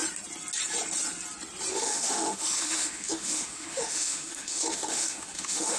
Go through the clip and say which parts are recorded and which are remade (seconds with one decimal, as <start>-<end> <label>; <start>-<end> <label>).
0.0-1.7 recorded; 1.7-5.8 remade